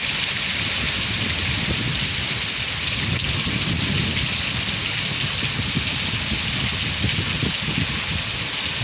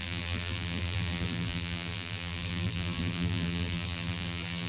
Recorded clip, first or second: first